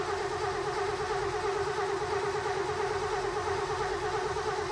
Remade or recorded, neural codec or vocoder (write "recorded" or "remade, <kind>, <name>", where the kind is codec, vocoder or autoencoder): recorded